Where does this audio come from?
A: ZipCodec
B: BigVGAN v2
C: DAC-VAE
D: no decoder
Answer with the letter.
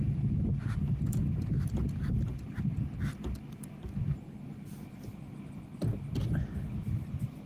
D